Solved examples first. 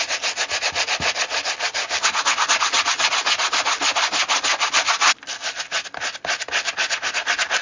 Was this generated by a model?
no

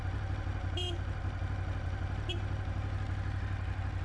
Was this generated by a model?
no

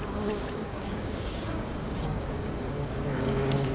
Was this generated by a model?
yes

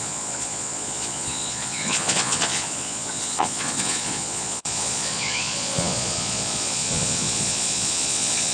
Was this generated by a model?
yes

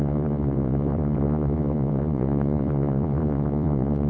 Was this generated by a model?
yes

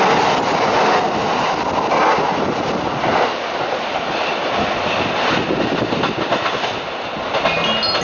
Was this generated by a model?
no